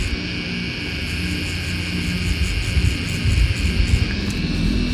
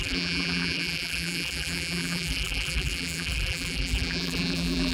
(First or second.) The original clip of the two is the first